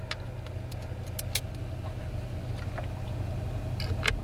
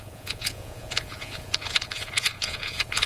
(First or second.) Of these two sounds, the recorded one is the first